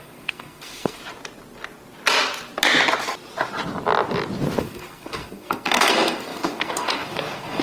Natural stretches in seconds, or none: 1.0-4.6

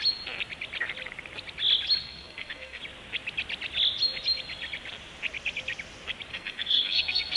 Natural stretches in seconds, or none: 0.0-2.0; 2.8-6.3